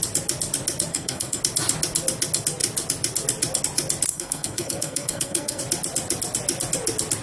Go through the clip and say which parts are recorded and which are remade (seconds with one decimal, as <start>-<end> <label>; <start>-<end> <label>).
0.0-0.9 recorded; 0.9-1.4 remade; 1.4-4.1 recorded; 4.1-5.6 remade; 5.6-7.2 recorded